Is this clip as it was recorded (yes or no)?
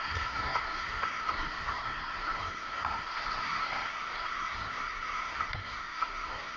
no